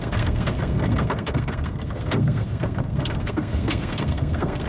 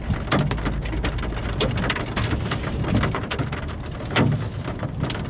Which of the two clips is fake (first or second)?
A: first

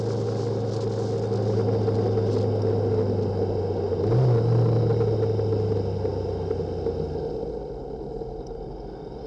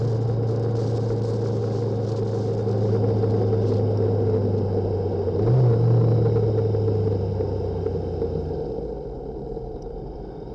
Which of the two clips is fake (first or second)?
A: second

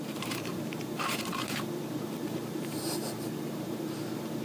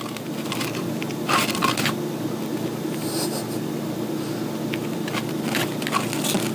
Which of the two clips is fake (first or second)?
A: first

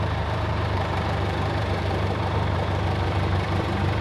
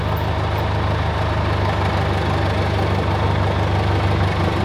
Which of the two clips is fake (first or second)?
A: first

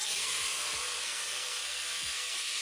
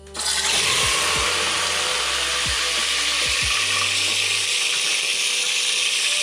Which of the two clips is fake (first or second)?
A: first